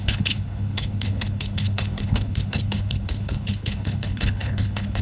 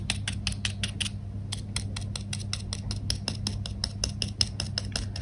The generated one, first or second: first